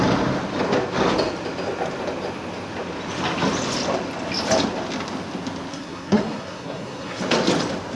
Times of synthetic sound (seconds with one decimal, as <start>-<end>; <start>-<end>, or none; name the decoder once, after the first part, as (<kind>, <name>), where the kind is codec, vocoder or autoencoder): 5.7-7.2 (codec, SNAC)